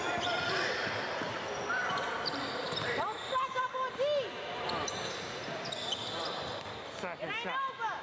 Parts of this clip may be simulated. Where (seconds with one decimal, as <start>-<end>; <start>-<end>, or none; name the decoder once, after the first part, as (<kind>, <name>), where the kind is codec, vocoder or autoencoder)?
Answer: 1.8-3.3 (vocoder, BigVGAN v2)

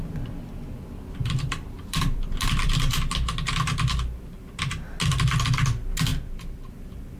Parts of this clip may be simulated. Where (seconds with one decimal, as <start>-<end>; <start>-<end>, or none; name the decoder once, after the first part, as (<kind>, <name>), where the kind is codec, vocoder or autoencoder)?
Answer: 1.2-2.7 (vocoder, BigVGAN v2); 6.1-6.7

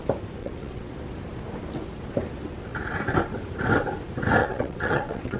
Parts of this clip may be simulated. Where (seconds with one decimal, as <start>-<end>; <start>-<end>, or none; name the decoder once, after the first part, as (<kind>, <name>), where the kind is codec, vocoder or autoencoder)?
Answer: 0.4-0.9 (vocoder, WaveNeXt); 4.4-5.4

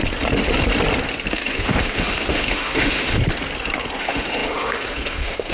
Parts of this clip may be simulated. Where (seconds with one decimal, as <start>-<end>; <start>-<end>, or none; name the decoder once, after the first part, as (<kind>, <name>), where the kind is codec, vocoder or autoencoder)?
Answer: 1.3-3.2 (autoencoder, DAC-VAE); 4.0-5.5